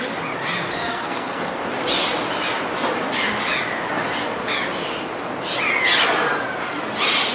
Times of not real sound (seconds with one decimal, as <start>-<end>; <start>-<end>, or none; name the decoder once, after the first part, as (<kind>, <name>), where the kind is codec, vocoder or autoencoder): 0.9-1.6 (codec, SNAC)

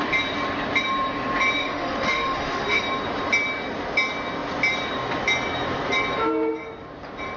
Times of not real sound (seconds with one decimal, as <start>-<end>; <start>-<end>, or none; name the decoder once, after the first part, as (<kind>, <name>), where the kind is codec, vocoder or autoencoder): 1.6-2.8 (autoencoder, DAC-VAE)

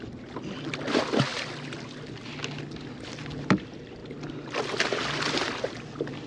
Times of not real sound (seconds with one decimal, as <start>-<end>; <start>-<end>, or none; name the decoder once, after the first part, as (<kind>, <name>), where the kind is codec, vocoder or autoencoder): none

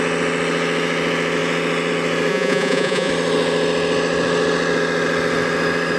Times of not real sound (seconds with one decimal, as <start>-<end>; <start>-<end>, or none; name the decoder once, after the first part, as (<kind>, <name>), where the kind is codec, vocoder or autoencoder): 2.3-3.1 (vocoder, Vocos)